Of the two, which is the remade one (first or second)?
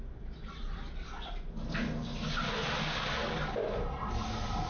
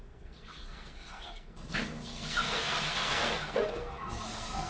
second